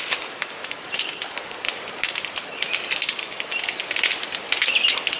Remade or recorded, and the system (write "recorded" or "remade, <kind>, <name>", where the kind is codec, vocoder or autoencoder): recorded